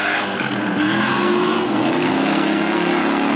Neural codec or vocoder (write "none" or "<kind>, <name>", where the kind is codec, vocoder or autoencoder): codec, SNAC